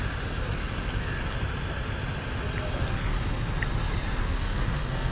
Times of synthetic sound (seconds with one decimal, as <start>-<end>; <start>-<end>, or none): 4.2-5.1